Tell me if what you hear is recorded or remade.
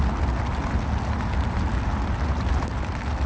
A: recorded